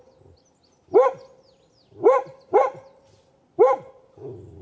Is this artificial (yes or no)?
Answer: no